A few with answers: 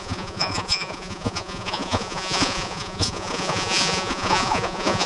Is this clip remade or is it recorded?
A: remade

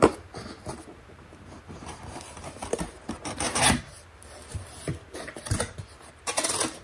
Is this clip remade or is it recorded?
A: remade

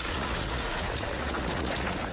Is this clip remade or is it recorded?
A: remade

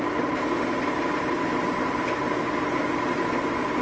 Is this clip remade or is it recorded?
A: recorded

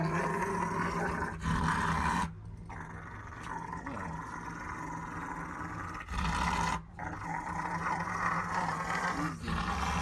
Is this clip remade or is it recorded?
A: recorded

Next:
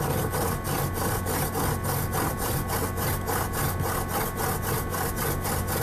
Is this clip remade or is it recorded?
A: recorded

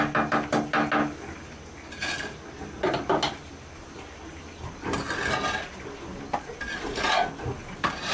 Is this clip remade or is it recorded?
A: recorded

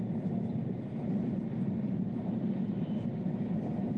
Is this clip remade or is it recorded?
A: remade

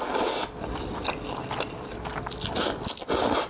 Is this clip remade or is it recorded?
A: recorded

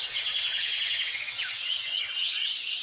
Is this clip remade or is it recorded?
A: remade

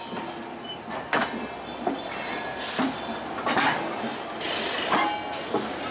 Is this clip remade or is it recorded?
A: recorded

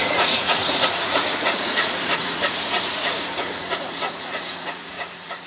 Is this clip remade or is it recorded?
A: remade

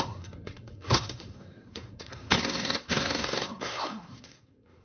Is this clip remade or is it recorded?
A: remade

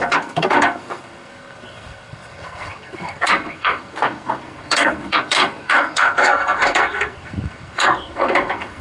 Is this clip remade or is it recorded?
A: remade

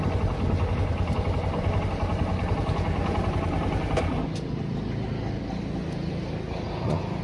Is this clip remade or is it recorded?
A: recorded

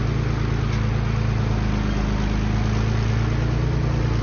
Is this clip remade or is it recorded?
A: recorded